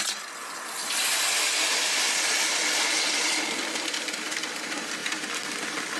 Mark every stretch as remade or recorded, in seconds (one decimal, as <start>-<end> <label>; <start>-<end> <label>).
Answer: 0.0-0.4 recorded; 0.4-4.0 remade; 4.0-6.0 recorded